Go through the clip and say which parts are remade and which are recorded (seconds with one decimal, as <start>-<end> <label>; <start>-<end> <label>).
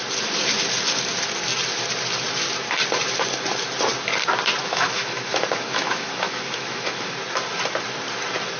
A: 0.0-4.6 recorded; 4.6-7.1 remade; 7.1-8.6 recorded